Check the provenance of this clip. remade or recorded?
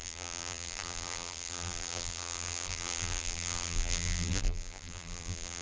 remade